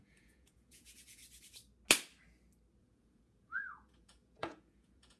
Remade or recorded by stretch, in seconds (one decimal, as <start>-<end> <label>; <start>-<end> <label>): 0.0-1.2 remade; 1.2-2.8 recorded; 2.8-5.2 remade